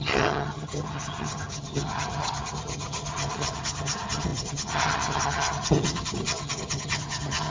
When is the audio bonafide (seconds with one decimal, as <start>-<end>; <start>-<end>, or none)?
none